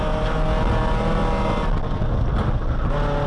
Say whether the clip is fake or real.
real